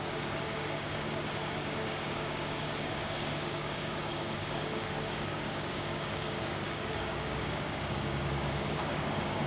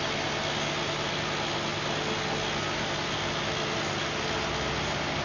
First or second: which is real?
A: second